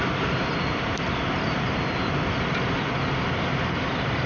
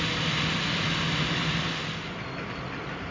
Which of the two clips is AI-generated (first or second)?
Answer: first